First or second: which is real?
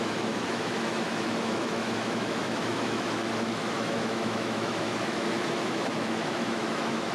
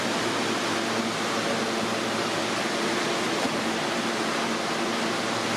second